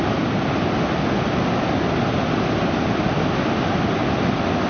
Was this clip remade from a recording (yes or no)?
no